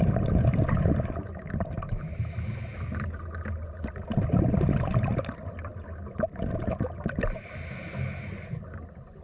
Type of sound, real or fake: real